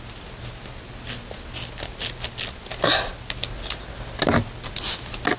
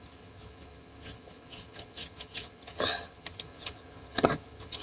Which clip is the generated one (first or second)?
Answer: second